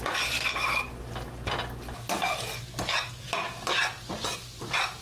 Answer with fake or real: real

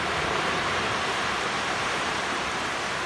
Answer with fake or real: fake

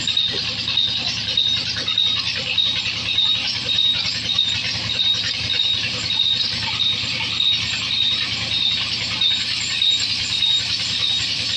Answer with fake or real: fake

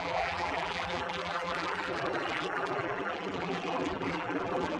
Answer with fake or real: fake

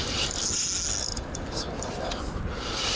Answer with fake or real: real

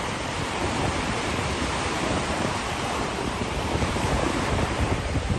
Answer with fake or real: fake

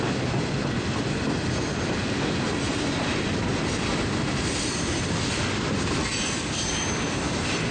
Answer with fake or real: fake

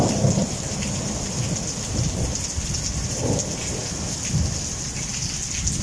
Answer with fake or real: real